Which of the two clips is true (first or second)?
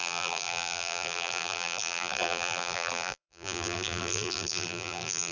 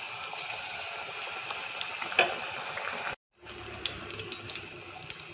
second